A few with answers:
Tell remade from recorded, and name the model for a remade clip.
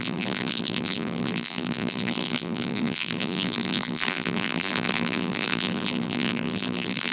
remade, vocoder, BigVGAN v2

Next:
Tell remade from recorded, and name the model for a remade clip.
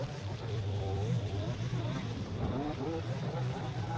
remade, vocoder, BigVGAN v2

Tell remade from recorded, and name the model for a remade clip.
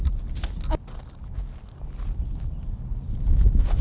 recorded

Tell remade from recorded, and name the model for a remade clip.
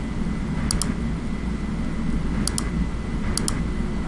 recorded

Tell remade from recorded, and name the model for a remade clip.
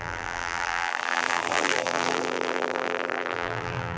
remade, vocoder, BigVGAN v2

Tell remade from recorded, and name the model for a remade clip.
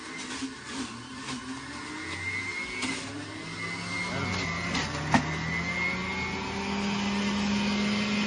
recorded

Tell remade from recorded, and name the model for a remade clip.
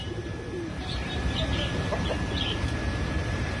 remade, vocoder, BigVGAN v2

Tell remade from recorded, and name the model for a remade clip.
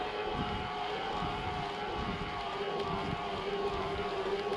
recorded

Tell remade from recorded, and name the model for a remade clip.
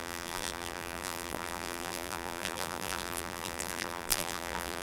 remade, vocoder, BigVGAN v2